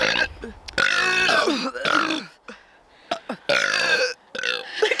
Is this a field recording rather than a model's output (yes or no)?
yes